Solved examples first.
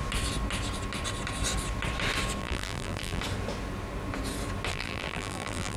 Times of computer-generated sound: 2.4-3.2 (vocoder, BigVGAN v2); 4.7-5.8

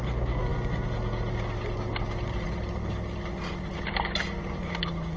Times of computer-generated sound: none

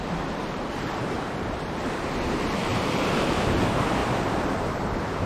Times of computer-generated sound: 0.4-3.6 (vocoder, BigVGAN v2); 4.0-5.3